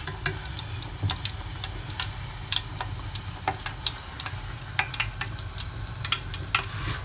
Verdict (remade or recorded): recorded